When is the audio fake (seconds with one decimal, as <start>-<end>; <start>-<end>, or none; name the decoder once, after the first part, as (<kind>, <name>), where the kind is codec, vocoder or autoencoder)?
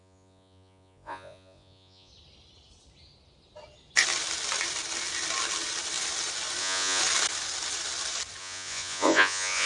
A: 0.0-2.1 (vocoder, Vocos); 6.6-7.0; 8.4-9.7